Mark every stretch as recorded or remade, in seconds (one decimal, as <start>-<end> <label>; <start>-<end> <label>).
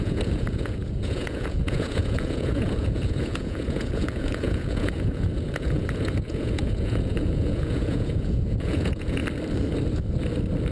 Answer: 0.0-9.2 remade; 9.2-10.7 recorded